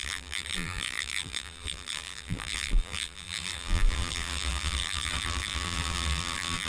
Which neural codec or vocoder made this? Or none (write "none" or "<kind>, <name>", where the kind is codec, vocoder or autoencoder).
vocoder, BigVGAN v2